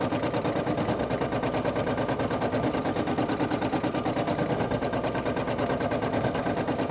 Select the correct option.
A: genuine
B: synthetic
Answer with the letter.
A